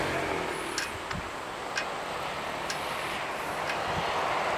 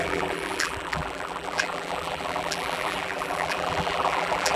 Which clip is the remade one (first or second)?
second